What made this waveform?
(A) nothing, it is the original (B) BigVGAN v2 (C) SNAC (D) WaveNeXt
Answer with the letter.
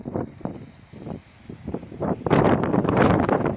B